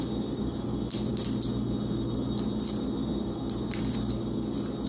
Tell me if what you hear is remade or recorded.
recorded